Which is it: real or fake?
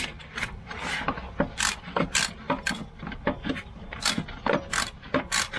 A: real